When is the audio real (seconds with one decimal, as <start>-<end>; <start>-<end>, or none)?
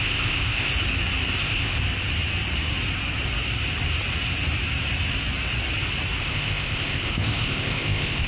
0.7-1.4; 1.8-6.2